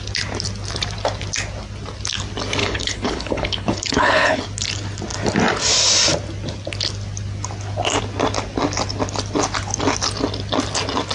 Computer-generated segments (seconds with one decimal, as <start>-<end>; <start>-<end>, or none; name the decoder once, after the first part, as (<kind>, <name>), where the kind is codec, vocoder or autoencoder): 2.6-4.4 (codec, HILCodec)